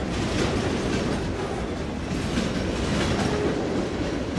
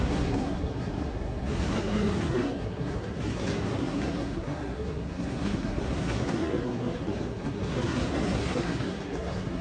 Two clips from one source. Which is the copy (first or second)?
second